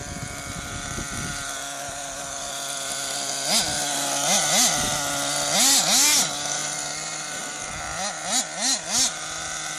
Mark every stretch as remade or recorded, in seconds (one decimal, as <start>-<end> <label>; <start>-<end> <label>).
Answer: 0.0-1.8 recorded; 1.8-2.5 remade; 2.5-9.8 recorded